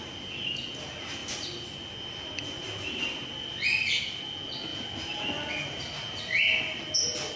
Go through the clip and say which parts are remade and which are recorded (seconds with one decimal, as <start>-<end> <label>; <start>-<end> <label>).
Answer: 0.0-7.4 recorded